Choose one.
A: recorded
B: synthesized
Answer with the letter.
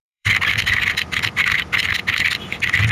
B